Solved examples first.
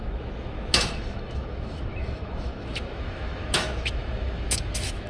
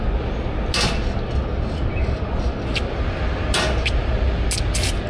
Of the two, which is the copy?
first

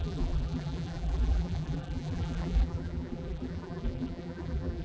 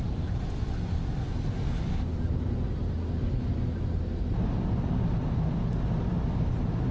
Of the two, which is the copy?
first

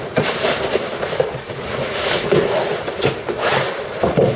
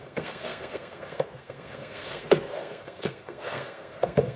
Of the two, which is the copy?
second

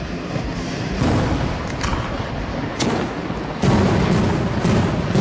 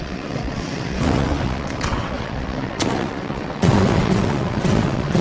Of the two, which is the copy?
second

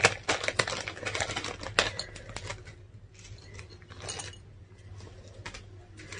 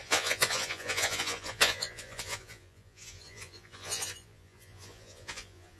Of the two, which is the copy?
second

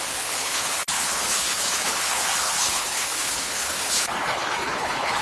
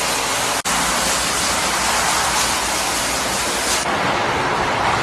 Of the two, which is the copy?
first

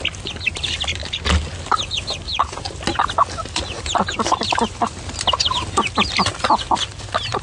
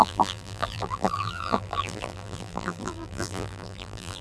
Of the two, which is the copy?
second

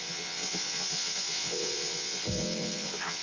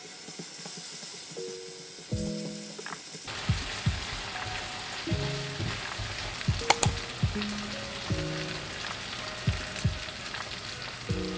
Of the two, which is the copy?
first